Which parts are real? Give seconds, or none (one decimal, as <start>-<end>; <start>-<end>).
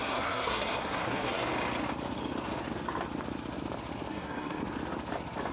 1.5-4.1; 4.6-5.5